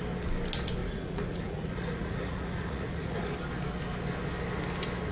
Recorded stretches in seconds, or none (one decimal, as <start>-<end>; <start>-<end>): 0.0-0.8; 3.3-5.1